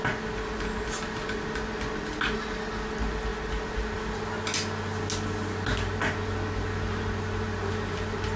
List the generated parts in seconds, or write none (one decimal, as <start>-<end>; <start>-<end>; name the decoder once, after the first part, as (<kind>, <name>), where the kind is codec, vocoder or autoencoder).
none

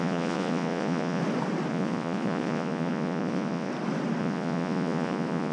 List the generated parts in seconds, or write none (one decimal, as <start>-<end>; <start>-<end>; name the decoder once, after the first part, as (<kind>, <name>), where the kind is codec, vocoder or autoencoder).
0.0-1.2 (vocoder, Vocos); 1.7-3.7; 4.2-5.5

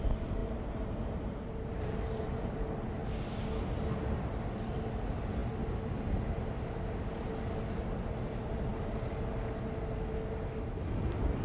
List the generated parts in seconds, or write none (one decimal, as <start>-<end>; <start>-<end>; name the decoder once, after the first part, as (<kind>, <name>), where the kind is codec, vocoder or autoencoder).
0.4-2.6 (vocoder, BigVGAN v2)